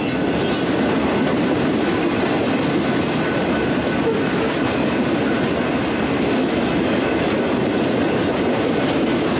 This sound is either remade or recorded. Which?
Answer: recorded